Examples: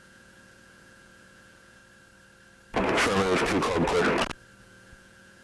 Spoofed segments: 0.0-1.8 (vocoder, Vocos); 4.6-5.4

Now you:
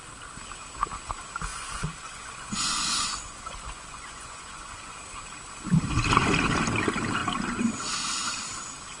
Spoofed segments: 1.5-5.0 (vocoder, Vocos)

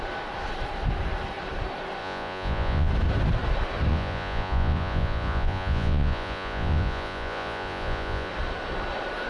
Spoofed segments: 2.0-2.9 (vocoder, Vocos); 3.9-8.3

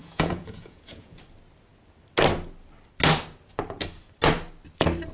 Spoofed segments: 0.0-1.2 (vocoder, Vocos)